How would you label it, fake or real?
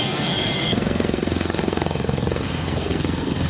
fake